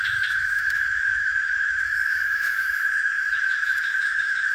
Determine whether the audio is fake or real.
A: fake